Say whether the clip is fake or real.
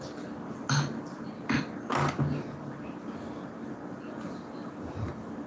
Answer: real